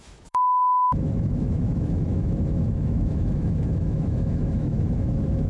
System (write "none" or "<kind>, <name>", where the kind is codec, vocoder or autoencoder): autoencoder, DAC-VAE